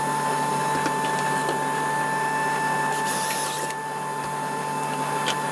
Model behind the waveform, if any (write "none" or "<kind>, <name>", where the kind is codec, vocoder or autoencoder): none